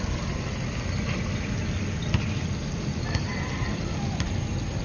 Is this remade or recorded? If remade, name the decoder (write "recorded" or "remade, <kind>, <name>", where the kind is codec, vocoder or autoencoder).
recorded